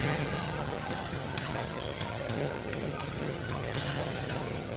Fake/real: fake